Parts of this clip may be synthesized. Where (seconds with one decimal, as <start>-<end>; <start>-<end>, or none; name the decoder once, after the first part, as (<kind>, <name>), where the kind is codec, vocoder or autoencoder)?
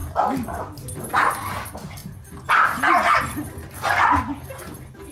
none